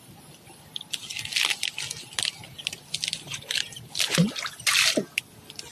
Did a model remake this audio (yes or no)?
no